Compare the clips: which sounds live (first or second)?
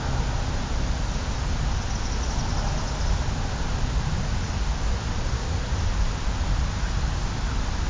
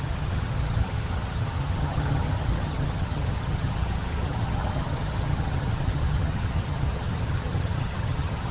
first